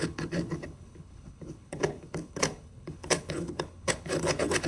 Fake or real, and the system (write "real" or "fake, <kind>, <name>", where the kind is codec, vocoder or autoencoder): fake, codec, HILCodec